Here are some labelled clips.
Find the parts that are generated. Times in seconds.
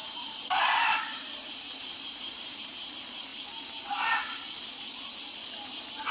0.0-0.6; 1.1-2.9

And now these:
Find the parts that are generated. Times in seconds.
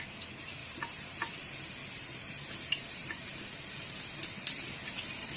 0.6-1.3; 1.8-3.6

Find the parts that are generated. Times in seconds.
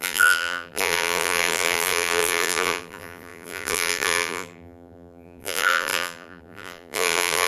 0.0-7.5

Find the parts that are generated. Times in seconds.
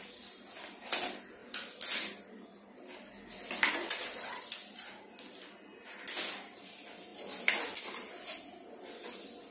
none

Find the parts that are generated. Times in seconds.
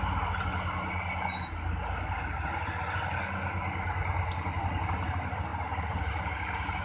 5.5-6.1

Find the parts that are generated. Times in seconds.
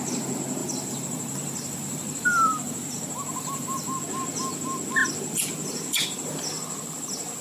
0.6-3.8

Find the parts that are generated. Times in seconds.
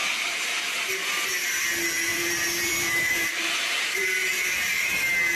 0.0-0.6; 2.1-4.9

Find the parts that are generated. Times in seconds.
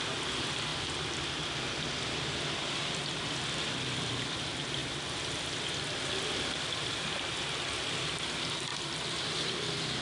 0.0-0.7; 3.6-4.8; 6.6-8.7